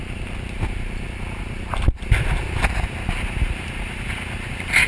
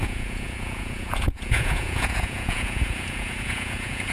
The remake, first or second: second